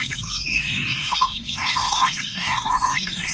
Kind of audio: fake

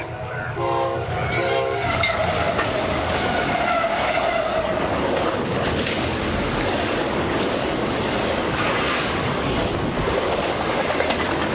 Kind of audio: fake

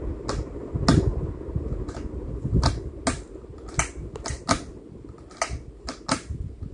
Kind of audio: real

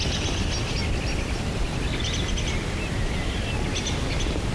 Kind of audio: real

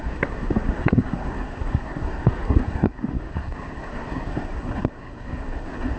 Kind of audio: fake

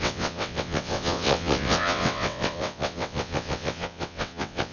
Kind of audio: fake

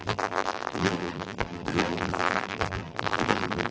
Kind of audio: fake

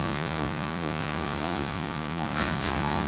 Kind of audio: fake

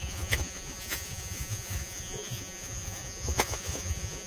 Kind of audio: fake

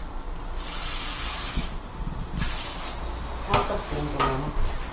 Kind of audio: real